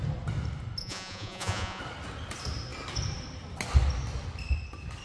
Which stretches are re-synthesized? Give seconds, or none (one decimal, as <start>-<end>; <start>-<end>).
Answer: 0.8-1.8